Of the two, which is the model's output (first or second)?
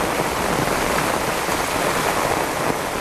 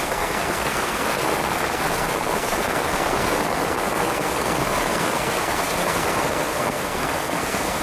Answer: second